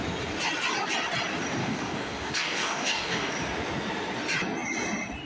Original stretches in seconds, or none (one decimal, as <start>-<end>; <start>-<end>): 0.0-1.6; 3.3-5.3